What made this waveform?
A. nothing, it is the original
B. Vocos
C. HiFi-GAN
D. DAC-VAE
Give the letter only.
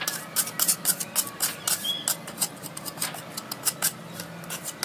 A